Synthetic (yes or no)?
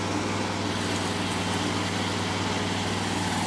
no